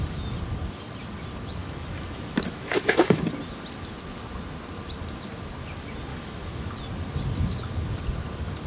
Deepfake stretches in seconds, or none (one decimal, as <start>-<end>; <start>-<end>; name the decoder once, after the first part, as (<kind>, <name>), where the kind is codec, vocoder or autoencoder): 1.6-3.2 (autoencoder, DAC-VAE); 6.1-6.7